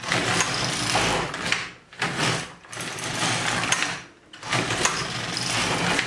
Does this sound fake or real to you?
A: real